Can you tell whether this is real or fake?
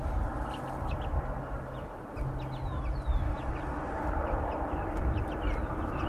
real